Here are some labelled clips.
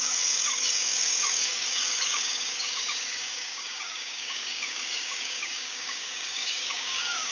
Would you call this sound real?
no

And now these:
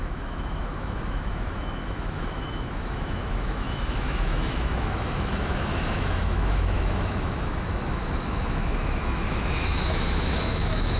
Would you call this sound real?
no